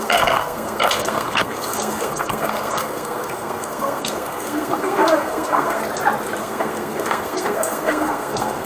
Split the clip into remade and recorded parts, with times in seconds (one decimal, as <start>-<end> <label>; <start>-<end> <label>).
0.0-5.8 remade; 5.8-6.4 recorded; 6.4-8.7 remade